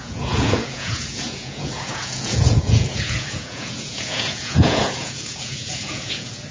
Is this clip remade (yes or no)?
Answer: yes